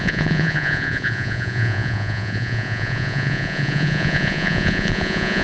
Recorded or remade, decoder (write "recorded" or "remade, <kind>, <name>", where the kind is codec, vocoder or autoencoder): remade, vocoder, Vocos